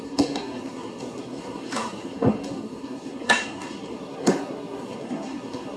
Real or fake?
fake